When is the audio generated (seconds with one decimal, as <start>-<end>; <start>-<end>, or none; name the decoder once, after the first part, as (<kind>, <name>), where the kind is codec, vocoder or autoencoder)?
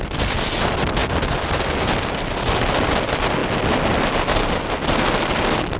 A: none